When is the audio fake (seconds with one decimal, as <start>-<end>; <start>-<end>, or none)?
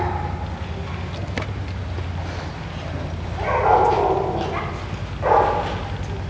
none